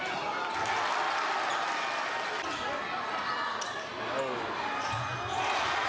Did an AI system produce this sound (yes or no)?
no